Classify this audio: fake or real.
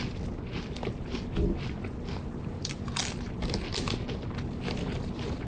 real